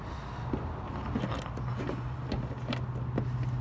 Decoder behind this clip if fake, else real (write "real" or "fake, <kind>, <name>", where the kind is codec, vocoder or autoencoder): real